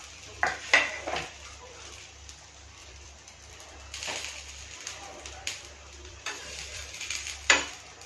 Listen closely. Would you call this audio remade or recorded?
remade